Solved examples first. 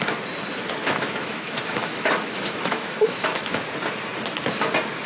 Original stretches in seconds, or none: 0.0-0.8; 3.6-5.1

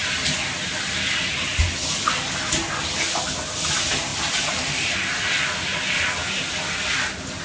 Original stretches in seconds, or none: 0.0-7.4